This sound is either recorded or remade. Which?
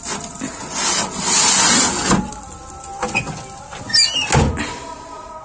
recorded